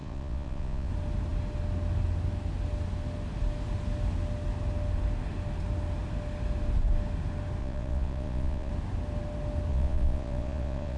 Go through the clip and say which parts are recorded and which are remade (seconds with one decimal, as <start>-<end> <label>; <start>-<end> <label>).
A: 0.0-0.9 remade; 0.9-7.6 recorded; 7.6-8.7 remade; 8.7-9.7 recorded; 9.7-11.0 remade